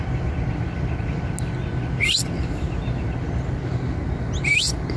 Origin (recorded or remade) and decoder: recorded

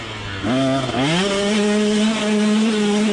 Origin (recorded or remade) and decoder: recorded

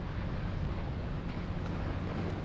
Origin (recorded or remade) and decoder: remade, codec, DAC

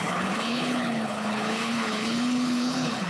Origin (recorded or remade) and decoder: remade, codec, HILCodec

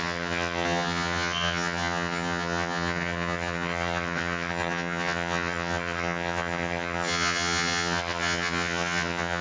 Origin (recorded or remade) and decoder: remade, vocoder, HiFi-GAN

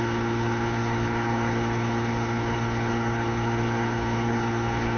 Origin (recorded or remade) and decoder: remade, codec, HILCodec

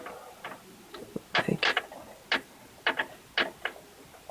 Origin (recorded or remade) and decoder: recorded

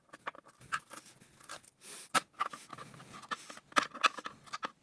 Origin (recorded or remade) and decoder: recorded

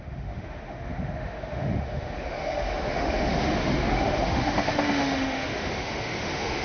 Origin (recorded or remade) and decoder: remade, autoencoder, DAC-VAE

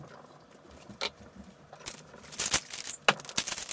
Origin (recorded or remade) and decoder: recorded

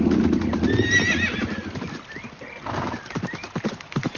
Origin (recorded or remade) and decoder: recorded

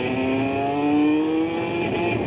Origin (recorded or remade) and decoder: recorded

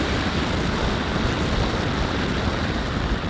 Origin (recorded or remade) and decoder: recorded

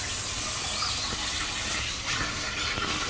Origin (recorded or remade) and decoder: recorded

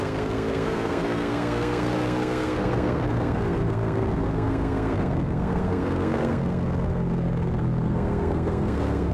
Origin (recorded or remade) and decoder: remade, codec, SNAC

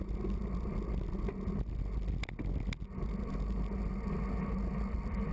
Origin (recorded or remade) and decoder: recorded